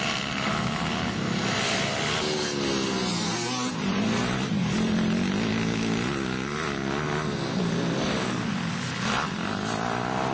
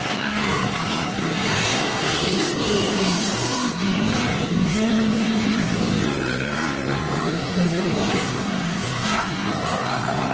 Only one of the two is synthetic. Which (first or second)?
second